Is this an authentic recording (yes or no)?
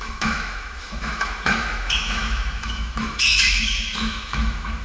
no